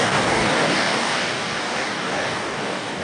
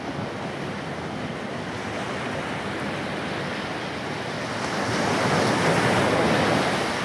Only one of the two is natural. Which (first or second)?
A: second